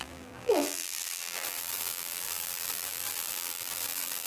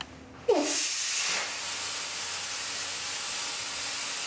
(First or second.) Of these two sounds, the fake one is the first